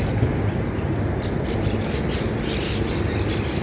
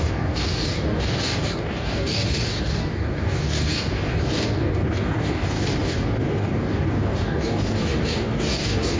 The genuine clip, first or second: first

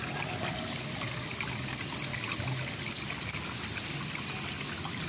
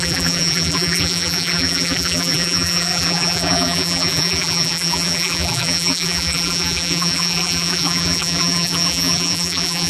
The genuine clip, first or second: first